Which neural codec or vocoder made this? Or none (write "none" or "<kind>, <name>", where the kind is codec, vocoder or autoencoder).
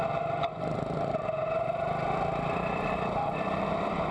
none